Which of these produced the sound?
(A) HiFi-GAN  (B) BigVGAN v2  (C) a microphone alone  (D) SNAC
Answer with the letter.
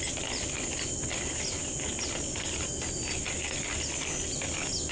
C